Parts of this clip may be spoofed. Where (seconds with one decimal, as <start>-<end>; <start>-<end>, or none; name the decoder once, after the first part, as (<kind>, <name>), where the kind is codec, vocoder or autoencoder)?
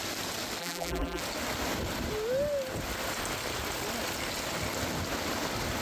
0.6-1.2 (vocoder, BigVGAN v2)